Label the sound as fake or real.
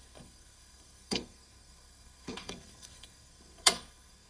fake